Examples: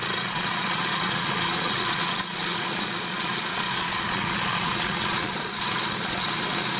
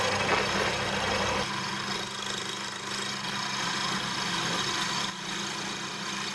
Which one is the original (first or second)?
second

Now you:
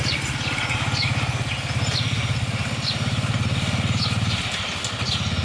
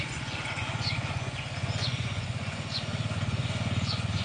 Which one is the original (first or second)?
first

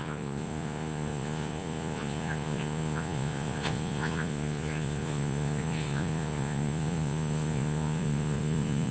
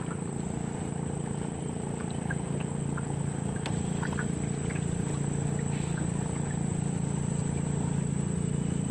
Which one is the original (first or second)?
second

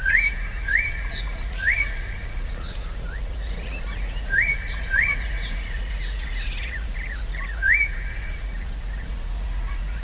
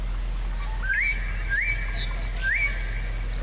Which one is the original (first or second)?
second